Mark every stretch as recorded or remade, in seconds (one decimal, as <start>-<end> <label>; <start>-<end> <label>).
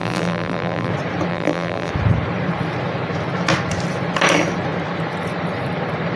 0.0-0.9 remade; 0.9-1.3 recorded; 1.3-1.9 remade; 1.9-6.2 recorded